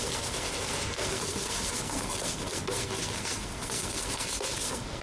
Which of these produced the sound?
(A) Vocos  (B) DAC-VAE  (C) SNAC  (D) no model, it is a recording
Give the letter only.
C